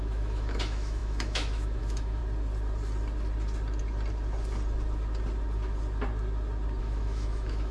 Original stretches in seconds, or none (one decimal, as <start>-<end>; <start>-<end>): 2.2-6.8